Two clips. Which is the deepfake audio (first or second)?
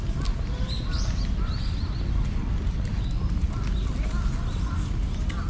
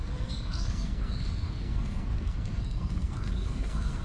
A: second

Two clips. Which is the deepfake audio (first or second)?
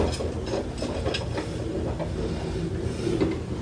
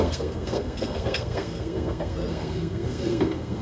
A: second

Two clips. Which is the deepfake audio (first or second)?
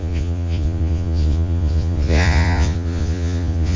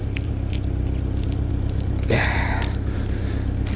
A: first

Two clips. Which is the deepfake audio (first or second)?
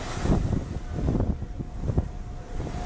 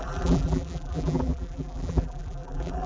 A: second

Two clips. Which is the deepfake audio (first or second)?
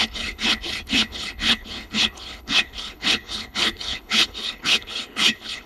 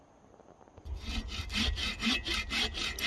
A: first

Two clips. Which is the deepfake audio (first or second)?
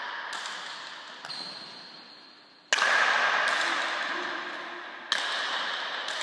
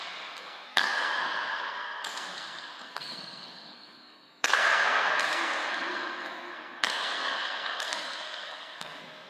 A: second